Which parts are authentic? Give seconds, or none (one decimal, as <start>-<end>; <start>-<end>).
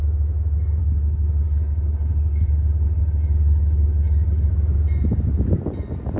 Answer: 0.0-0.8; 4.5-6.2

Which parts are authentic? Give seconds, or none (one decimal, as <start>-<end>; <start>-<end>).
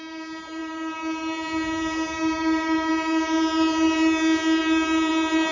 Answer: 0.0-5.5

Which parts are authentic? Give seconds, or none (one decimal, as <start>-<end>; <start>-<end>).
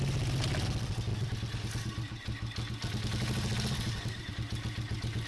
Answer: 0.0-5.3